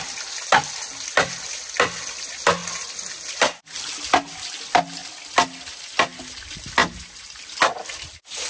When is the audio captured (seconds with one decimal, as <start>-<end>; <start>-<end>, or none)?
0.0-6.8; 7.4-8.5